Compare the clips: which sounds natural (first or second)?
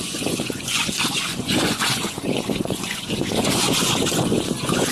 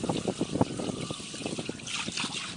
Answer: second